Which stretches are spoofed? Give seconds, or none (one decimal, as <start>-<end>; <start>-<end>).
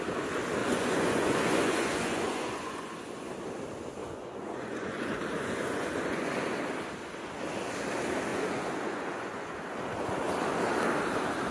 0.6-3.3; 4.0-6.5; 8.3-9.6